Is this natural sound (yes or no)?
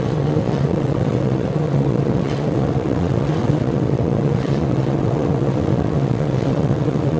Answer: no